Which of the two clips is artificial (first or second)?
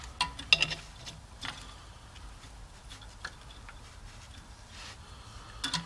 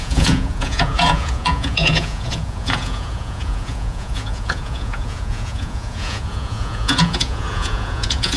second